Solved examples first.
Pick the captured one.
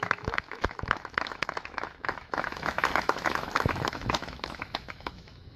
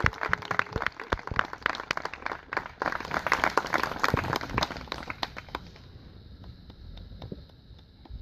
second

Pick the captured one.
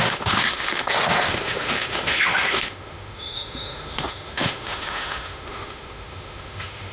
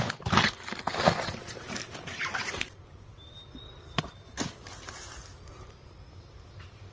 second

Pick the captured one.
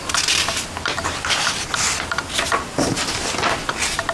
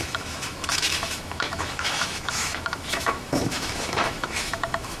first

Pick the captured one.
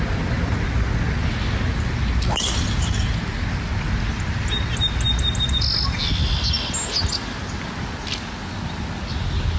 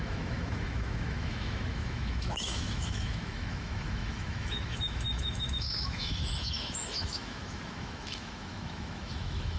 first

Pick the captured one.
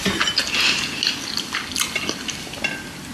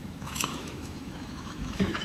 first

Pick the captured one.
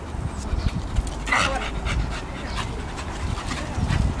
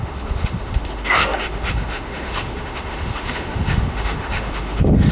first